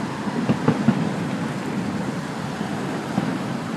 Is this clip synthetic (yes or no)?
no